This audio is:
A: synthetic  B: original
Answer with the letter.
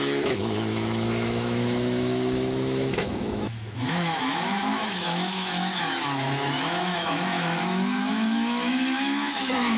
A